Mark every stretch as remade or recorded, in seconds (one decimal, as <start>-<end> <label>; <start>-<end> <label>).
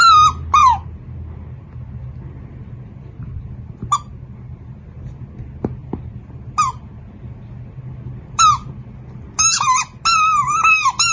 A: 0.0-11.1 recorded